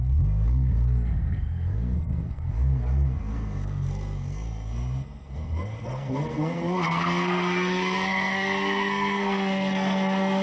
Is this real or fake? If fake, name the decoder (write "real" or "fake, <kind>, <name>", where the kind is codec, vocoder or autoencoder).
fake, codec, SNAC